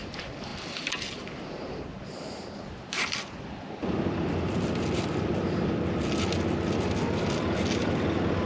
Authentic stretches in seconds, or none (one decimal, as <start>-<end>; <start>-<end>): 0.0-8.5